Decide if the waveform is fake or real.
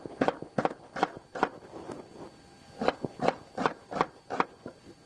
real